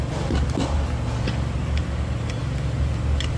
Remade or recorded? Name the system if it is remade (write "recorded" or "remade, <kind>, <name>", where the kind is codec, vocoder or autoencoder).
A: recorded